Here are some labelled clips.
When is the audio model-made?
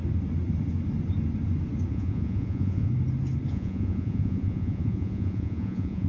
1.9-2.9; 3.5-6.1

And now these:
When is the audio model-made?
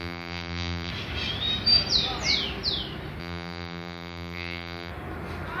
0.0-0.9; 3.2-4.9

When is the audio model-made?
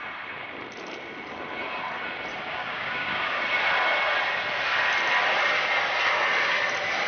2.3-3.4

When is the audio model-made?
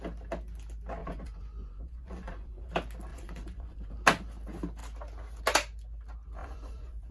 1.0-2.7; 3.1-3.9; 6.4-7.1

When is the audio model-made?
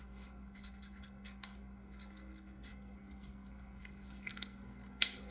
0.0-5.3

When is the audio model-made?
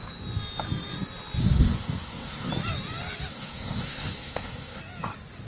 1.4-2.5; 3.3-4.8